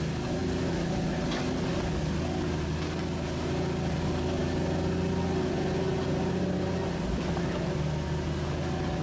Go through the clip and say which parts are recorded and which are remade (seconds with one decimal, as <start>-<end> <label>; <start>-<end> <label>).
0.0-9.0 recorded